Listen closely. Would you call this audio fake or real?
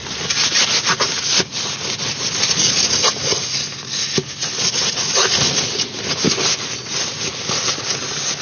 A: real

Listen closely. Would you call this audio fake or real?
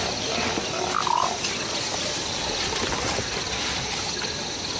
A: real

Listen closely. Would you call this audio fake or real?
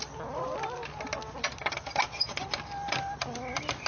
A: real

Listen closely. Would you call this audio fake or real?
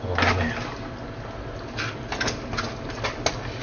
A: real